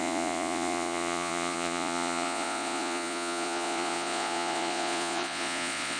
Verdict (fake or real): fake